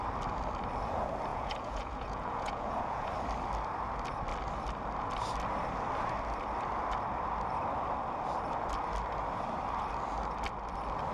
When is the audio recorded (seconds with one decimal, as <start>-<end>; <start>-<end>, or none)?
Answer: 0.0-1.3; 3.1-11.1